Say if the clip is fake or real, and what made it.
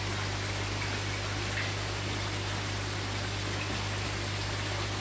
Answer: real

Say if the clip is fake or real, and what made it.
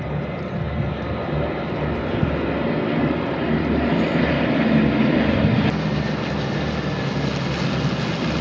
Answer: real